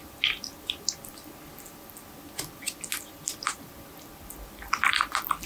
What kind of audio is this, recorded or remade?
recorded